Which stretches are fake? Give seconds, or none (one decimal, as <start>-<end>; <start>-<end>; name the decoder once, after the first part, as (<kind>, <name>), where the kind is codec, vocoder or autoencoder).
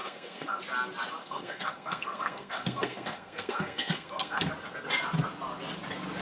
0.0-0.6 (codec, SNAC); 1.2-4.5